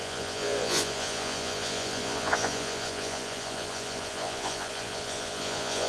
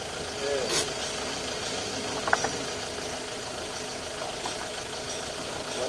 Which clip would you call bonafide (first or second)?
second